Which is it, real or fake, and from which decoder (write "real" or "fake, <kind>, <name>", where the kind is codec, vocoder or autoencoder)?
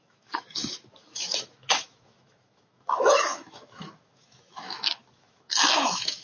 fake, autoencoder, DAC-VAE